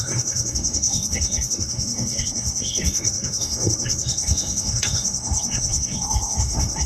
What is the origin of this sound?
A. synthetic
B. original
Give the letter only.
A